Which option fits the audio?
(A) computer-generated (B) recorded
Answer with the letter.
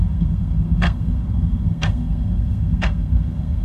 A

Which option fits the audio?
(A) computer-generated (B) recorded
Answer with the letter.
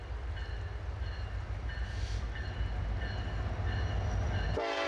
B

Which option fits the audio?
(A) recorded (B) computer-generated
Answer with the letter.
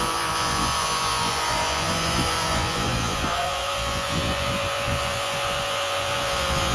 B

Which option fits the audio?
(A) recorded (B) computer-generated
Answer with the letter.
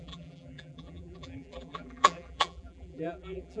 B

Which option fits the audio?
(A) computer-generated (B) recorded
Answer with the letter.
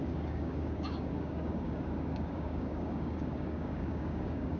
A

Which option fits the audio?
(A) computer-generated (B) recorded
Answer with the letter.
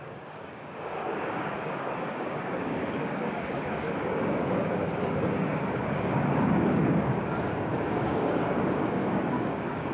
A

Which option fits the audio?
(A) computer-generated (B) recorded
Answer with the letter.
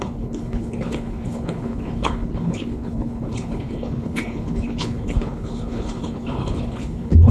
A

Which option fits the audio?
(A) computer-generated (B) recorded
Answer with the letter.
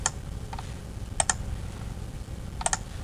B